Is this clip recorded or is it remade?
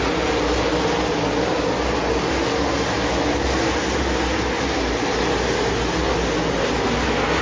recorded